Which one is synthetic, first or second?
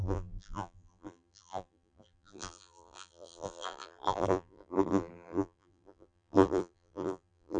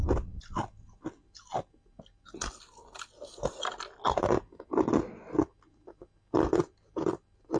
first